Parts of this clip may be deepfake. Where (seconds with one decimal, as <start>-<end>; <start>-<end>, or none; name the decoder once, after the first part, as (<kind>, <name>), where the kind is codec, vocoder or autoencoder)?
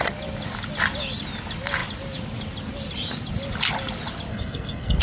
4.3-5.0 (codec, SNAC)